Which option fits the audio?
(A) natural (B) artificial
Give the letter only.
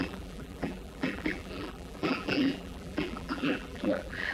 B